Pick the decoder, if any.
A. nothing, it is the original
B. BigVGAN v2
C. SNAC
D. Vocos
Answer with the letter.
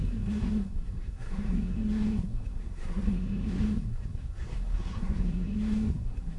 C